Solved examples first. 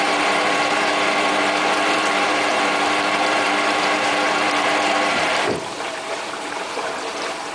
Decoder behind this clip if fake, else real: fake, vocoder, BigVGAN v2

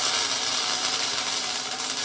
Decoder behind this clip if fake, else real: real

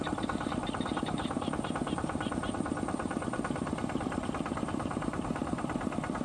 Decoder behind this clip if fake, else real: fake, vocoder, BigVGAN v2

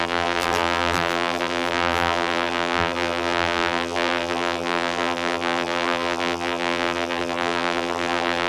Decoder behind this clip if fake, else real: fake, vocoder, BigVGAN v2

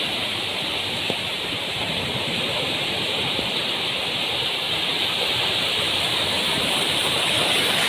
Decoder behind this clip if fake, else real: fake, vocoder, BigVGAN v2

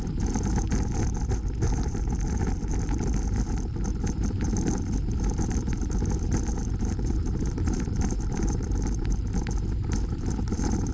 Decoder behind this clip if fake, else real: fake, vocoder, BigVGAN v2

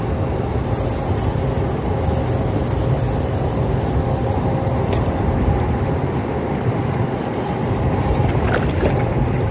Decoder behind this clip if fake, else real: real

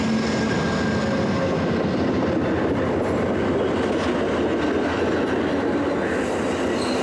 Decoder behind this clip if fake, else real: real